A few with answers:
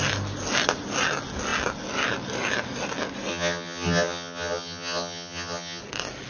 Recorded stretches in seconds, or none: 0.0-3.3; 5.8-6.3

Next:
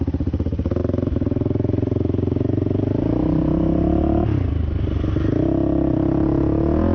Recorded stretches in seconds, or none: 0.0-0.8; 4.5-6.9

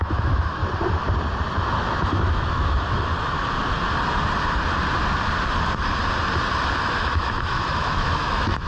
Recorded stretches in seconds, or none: 0.6-1.6; 3.1-6.9